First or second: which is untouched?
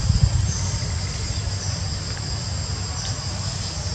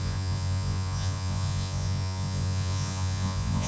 first